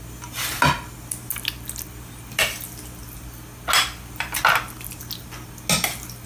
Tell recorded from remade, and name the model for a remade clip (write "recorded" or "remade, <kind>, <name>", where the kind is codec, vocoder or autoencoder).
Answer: recorded